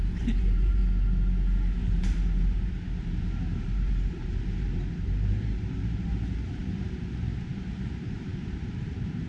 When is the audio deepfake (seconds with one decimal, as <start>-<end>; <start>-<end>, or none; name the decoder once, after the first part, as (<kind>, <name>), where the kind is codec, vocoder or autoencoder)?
0.0-0.8 (vocoder, BigVGAN v2); 1.7-9.3